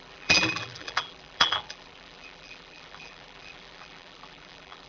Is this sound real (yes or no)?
no